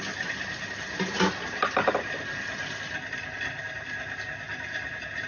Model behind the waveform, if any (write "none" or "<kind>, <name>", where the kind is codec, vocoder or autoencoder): none